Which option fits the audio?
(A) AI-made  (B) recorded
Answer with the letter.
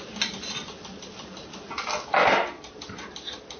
B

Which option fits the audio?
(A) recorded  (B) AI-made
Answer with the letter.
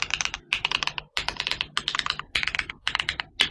A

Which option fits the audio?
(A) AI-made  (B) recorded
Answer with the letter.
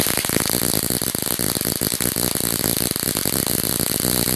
B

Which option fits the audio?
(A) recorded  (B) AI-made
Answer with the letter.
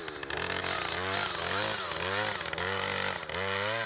A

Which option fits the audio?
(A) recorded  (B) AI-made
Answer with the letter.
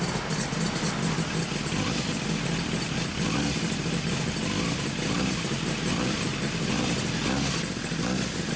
A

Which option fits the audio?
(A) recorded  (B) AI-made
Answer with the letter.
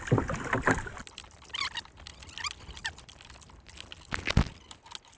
A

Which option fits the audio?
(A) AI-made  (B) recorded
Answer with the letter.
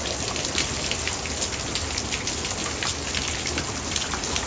B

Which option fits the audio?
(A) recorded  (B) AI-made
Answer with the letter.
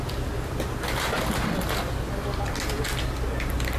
A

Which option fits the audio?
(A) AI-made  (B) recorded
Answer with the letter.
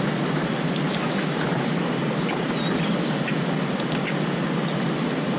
B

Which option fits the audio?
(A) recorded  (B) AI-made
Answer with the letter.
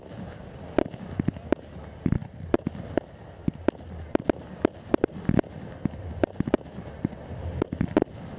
A